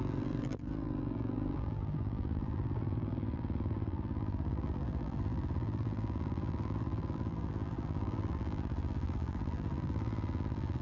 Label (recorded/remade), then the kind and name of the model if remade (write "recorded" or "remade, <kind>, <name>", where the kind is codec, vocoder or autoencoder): remade, vocoder, BigVGAN v2